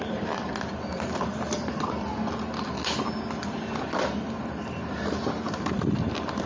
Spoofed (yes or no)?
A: no